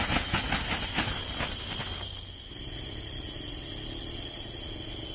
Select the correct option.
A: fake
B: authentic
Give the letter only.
B